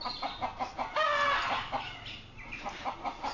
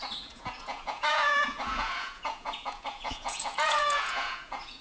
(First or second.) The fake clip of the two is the second